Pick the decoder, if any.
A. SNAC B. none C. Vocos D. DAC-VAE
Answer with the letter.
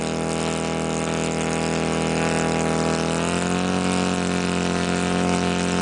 B